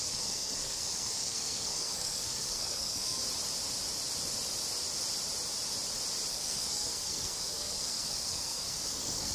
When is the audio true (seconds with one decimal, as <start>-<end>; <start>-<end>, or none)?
3.2-6.3